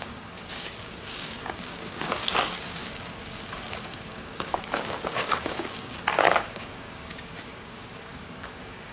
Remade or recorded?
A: remade